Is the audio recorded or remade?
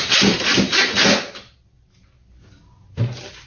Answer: recorded